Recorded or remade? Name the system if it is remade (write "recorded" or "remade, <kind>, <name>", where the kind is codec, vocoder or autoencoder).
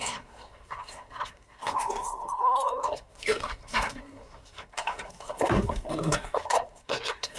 remade, codec, SNAC